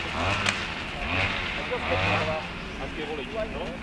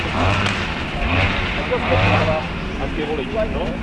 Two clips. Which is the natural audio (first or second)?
first